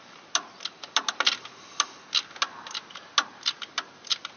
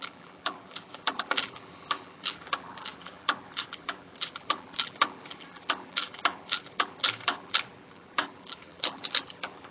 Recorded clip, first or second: first